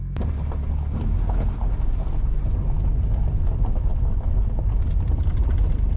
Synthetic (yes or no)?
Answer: no